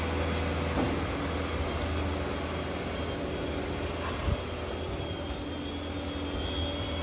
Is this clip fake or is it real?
real